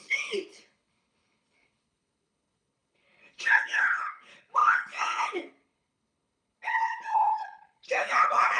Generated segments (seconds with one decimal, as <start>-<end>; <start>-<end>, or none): 0.0-8.6